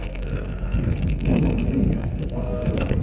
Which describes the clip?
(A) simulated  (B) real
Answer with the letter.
A